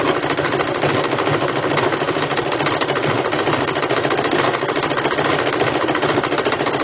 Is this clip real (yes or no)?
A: yes